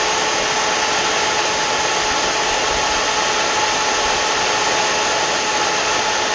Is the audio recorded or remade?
recorded